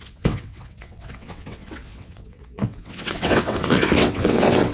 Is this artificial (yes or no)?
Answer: yes